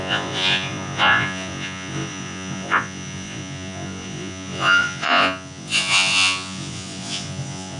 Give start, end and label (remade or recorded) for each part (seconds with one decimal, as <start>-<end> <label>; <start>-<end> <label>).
0.0-7.8 remade

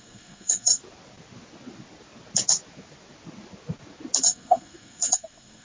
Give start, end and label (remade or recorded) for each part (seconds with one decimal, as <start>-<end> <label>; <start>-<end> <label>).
0.0-0.8 remade; 0.8-4.2 recorded; 4.2-5.6 remade

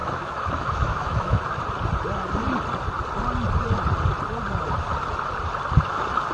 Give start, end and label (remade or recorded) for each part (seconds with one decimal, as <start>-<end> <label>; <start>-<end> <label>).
0.0-1.4 remade; 1.4-6.3 recorded

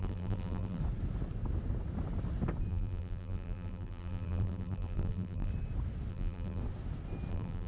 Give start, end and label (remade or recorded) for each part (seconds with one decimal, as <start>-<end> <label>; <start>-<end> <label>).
0.0-0.8 remade; 0.8-2.7 recorded; 2.7-5.5 remade; 5.5-6.1 recorded; 6.1-6.6 remade; 6.6-7.3 recorded; 7.3-7.7 remade

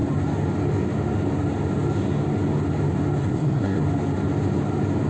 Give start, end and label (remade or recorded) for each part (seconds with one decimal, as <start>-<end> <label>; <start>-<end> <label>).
0.0-3.2 recorded; 3.2-3.8 remade; 3.8-5.1 recorded

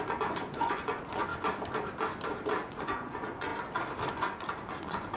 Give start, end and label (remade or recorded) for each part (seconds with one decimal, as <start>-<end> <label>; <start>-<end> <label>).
0.0-1.3 remade; 1.3-2.6 recorded; 2.6-3.5 remade; 3.5-4.1 recorded; 4.1-5.2 remade